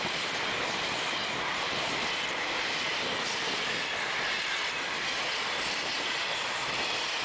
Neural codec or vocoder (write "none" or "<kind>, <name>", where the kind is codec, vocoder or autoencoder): none